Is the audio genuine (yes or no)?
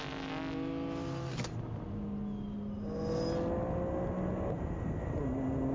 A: yes